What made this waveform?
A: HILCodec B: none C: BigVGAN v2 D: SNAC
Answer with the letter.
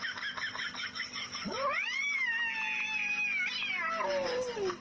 B